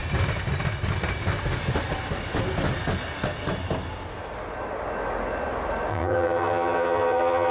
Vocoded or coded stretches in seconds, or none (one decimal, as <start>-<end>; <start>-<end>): 5.9-7.5